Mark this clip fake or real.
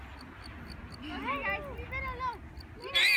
real